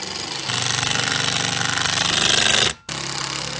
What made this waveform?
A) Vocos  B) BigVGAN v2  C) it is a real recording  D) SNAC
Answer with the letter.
C